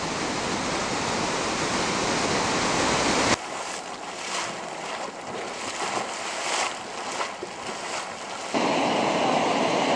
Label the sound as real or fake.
real